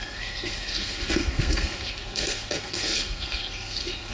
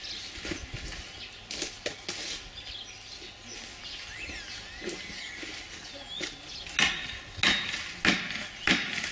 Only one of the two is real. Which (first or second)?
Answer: second